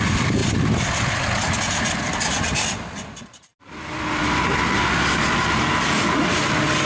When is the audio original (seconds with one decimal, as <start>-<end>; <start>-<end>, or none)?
0.0-6.9